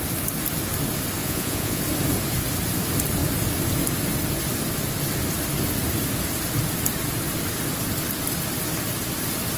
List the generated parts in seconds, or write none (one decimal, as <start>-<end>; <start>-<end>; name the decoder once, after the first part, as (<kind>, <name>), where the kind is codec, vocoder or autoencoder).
1.2-1.8 (vocoder, Vocos)